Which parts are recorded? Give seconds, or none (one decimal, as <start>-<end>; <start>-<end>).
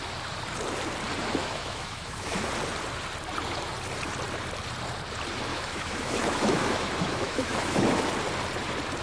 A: 0.0-1.4; 2.5-5.5; 8.0-9.0